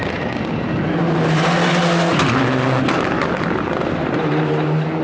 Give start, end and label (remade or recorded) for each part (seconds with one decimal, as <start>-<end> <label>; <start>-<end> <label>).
0.0-5.0 recorded